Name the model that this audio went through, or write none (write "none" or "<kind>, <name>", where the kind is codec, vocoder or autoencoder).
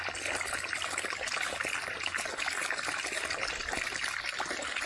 none